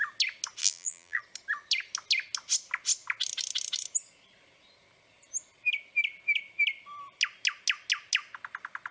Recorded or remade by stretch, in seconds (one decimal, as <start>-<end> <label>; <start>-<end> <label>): 0.0-0.6 recorded; 0.6-1.2 remade; 1.2-8.9 recorded